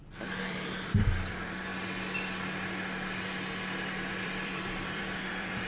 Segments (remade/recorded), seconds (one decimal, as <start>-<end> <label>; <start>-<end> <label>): 0.0-1.7 remade; 1.7-4.1 recorded; 4.1-5.7 remade